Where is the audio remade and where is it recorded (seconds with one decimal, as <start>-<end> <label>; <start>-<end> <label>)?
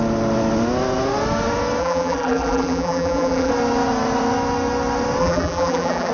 0.0-1.8 recorded; 1.8-3.5 remade; 3.5-5.2 recorded; 5.2-6.1 remade